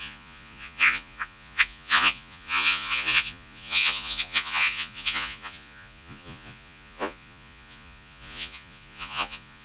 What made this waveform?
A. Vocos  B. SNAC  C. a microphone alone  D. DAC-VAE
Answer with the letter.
A